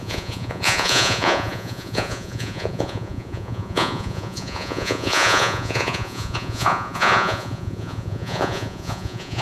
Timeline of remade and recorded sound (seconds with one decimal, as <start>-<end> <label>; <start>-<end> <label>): 0.0-9.4 remade